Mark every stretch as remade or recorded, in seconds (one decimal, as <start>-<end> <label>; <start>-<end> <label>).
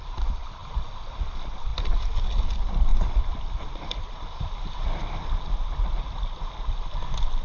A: 0.0-7.4 recorded